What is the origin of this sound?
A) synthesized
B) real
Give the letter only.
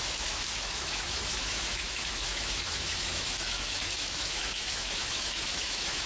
A